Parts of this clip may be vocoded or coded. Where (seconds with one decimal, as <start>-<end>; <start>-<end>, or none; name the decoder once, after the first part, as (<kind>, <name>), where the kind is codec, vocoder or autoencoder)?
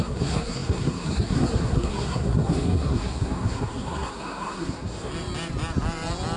0.0-5.1 (codec, SNAC)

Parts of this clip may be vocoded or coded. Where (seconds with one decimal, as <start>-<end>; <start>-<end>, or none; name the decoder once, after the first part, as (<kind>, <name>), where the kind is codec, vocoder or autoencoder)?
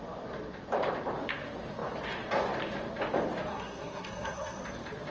3.5-4.6 (codec, SNAC)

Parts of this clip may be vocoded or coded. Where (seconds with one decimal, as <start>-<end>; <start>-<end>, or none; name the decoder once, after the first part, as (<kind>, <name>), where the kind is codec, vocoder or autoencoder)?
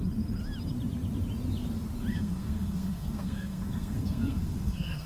2.1-5.1 (codec, SNAC)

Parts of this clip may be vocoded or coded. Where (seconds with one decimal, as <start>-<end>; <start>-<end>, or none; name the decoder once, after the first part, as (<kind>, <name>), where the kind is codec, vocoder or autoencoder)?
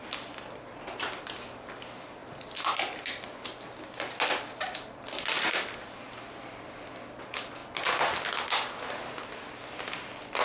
none